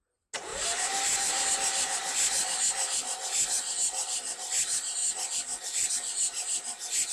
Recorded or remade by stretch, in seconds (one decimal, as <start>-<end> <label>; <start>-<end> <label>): 0.0-0.5 recorded; 0.5-1.5 remade; 1.5-5.0 recorded; 5.0-5.9 remade; 5.9-7.1 recorded